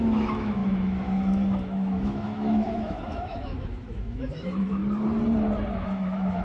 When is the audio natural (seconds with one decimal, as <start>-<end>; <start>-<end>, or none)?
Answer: 4.8-5.7